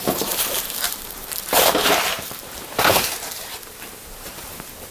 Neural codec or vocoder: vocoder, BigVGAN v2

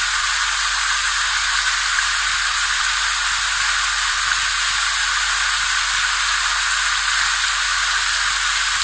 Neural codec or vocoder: none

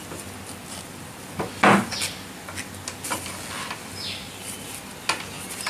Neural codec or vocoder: none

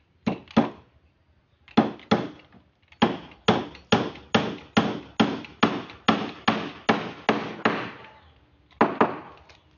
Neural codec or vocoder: none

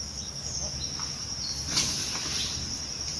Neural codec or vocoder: none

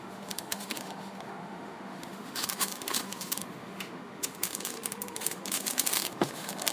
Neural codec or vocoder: autoencoder, DAC-VAE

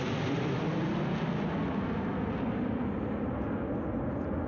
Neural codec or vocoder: none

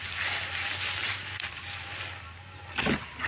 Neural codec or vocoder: none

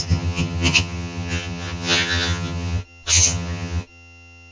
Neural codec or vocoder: vocoder, HiFi-GAN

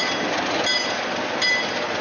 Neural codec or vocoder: none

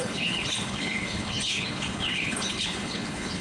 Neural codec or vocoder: codec, HILCodec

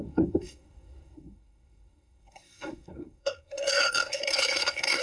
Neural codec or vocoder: codec, SNAC